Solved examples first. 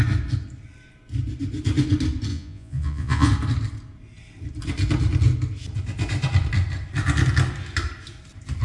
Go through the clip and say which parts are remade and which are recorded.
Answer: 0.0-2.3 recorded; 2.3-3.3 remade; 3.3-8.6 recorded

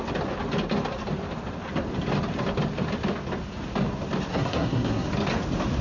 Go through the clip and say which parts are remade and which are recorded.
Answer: 0.0-4.3 recorded; 4.3-5.1 remade; 5.1-5.8 recorded

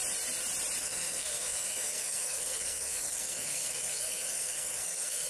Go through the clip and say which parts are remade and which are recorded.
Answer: 0.0-0.8 recorded; 0.8-5.3 remade

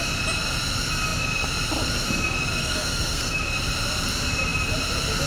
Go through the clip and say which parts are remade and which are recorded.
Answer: 0.0-2.6 recorded; 2.6-3.4 remade; 3.4-5.3 recorded

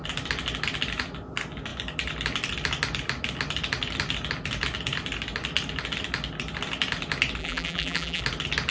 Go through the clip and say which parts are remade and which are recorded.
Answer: 0.0-7.4 recorded; 7.4-8.2 remade; 8.2-8.7 recorded

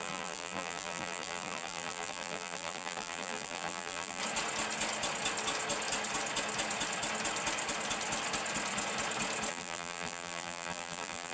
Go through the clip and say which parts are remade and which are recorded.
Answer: 0.0-4.2 remade; 4.2-9.5 recorded; 9.5-11.3 remade

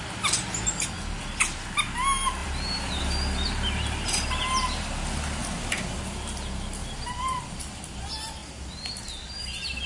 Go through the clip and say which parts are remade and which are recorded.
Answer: 0.0-2.4 recorded; 2.4-3.0 remade; 3.0-5.4 recorded; 5.4-6.0 remade; 6.0-6.8 recorded; 6.8-7.8 remade; 7.8-9.9 recorded

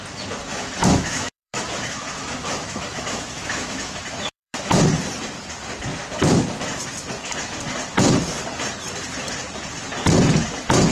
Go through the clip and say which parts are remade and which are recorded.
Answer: 0.0-0.5 recorded; 0.5-4.8 remade; 4.8-10.9 recorded